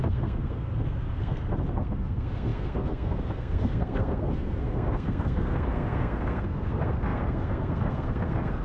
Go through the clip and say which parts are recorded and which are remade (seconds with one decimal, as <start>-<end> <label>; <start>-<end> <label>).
0.0-8.6 remade